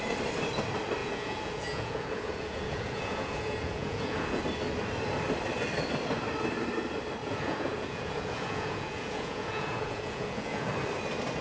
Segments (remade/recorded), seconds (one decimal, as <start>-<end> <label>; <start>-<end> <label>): 0.0-1.0 recorded; 1.0-4.4 remade; 4.4-7.2 recorded; 7.2-10.7 remade; 10.7-11.4 recorded